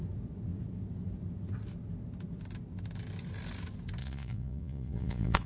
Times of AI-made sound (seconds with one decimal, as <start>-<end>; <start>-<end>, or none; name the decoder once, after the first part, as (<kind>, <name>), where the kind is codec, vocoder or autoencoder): 4.0-5.5 (vocoder, Vocos)